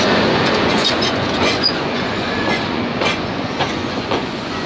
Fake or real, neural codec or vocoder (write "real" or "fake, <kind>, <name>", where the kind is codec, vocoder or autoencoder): fake, vocoder, Vocos